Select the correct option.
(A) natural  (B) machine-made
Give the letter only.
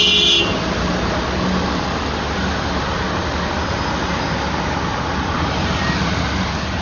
A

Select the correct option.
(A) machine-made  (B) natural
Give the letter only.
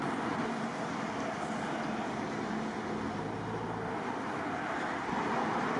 B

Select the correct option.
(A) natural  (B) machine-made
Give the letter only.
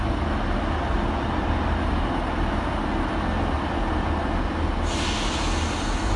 A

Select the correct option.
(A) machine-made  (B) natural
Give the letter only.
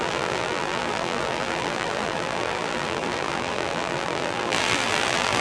A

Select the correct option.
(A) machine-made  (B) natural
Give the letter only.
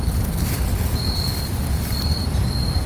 B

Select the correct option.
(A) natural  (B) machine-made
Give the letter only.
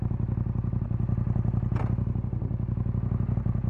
A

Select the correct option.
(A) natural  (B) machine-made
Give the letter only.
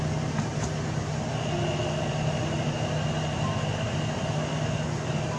A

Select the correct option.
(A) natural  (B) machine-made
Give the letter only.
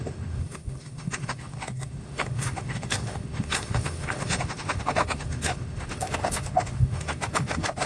B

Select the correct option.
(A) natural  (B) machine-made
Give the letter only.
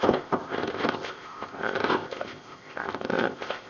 B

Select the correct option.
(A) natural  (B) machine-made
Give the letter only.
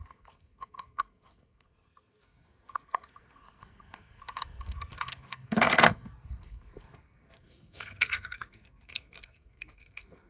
B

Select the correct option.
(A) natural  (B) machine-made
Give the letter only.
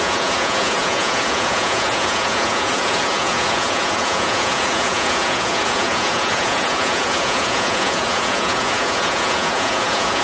B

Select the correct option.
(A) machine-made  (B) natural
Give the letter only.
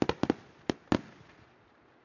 B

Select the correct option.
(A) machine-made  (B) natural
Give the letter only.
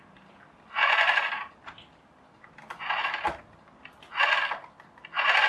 B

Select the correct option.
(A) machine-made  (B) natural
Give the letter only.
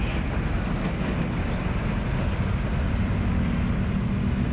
B